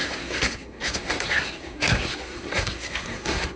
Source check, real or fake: fake